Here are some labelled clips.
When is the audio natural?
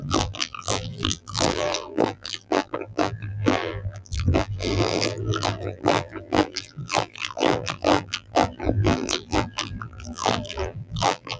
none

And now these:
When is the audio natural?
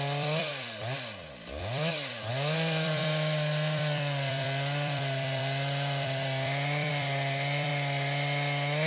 7.7-8.9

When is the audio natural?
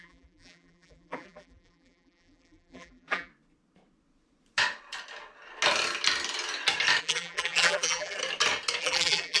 3.3-7.0; 8.2-8.8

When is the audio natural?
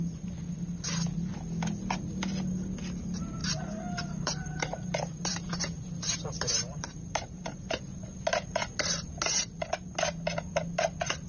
0.0-3.4; 7.8-11.3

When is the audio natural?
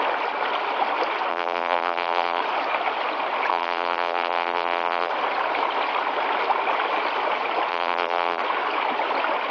0.0-1.3; 2.4-3.5; 5.1-7.7; 8.4-9.5